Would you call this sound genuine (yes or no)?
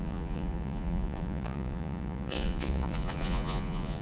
no